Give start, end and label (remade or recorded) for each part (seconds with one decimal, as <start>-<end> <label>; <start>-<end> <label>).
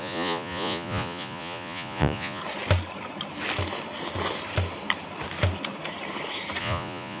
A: 0.0-2.4 remade; 2.4-6.6 recorded; 6.6-7.2 remade